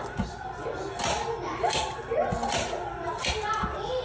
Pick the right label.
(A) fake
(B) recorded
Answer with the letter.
B